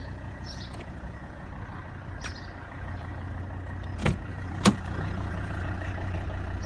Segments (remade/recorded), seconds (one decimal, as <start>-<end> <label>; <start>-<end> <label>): 0.0-1.5 remade; 1.5-2.6 recorded; 2.6-3.4 remade; 3.4-4.0 recorded; 4.0-5.6 remade; 5.6-6.7 recorded